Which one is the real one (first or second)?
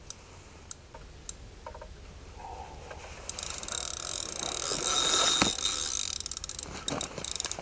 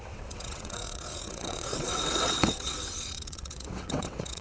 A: first